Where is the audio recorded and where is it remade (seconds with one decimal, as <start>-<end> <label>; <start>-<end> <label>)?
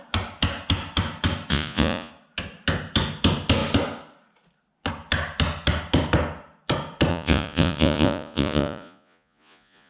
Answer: 0.0-1.5 recorded; 1.5-2.1 remade; 2.1-7.1 recorded; 7.1-9.9 remade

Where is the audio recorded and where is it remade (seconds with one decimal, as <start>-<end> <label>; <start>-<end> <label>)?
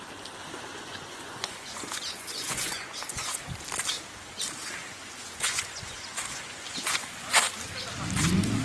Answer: 0.0-0.7 recorded; 0.7-3.4 remade; 3.4-4.8 recorded; 4.8-7.4 remade; 7.4-8.6 recorded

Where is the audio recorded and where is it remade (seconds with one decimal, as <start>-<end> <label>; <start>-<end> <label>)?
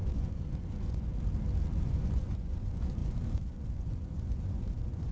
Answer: 0.0-1.1 remade; 1.1-1.8 recorded; 1.8-5.1 remade